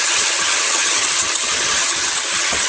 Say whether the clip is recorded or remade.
remade